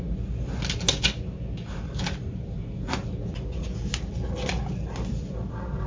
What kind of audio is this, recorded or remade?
recorded